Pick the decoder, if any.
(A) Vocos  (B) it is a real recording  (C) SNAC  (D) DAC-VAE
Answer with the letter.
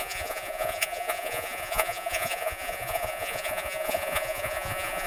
A